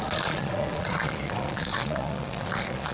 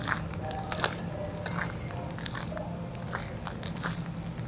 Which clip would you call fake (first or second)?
first